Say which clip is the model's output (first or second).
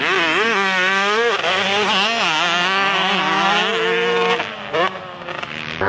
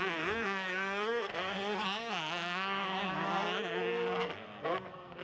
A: second